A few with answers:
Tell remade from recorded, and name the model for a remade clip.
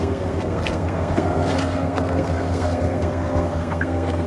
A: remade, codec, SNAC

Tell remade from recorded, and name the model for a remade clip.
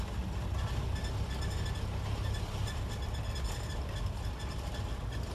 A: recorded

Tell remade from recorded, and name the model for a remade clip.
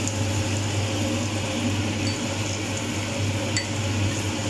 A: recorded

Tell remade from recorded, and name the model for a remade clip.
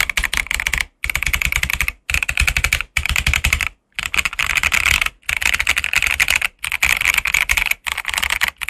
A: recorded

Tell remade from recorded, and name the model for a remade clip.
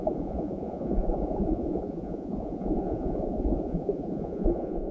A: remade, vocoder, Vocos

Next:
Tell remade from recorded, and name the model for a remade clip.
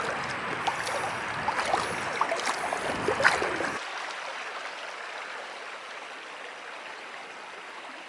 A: recorded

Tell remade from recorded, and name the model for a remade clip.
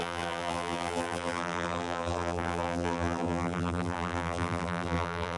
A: remade, vocoder, BigVGAN v2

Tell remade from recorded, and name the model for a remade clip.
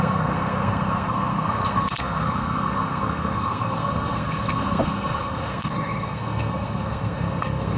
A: remade, codec, SNAC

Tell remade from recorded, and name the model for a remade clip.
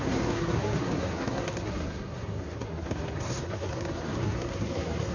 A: remade, codec, SNAC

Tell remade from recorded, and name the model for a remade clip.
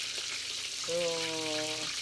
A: recorded